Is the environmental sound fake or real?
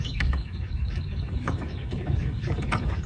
fake